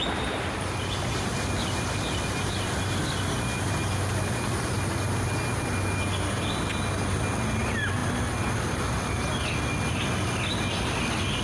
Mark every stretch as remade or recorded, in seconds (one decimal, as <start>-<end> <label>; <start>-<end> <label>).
0.0-11.4 recorded